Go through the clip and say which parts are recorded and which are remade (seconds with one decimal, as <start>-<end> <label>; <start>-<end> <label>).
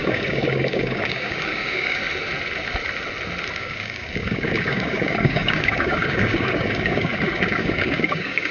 0.0-2.0 remade; 2.0-3.5 recorded; 3.5-8.5 remade